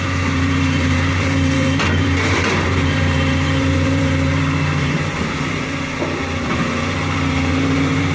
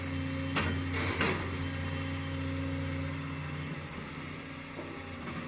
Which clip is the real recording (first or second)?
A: second